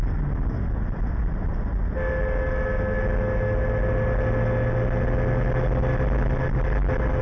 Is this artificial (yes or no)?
no